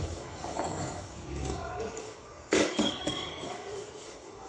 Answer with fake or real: fake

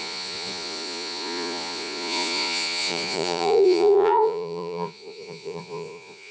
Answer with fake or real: fake